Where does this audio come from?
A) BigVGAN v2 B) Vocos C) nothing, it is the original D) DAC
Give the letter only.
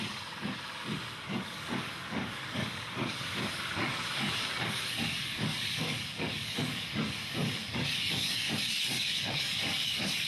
D